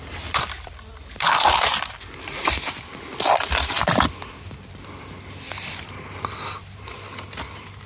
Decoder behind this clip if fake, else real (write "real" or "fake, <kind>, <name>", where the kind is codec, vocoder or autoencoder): fake, vocoder, BigVGAN v2